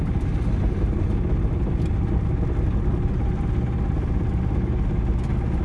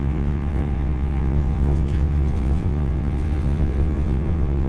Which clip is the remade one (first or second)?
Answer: second